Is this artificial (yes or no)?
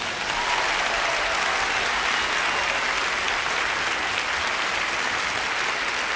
no